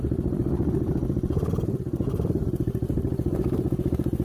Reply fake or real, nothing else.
fake